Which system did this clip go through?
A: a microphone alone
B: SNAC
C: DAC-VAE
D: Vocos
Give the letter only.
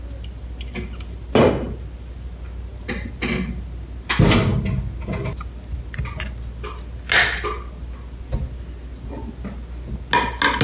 A